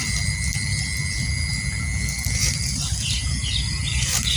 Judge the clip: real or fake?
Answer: real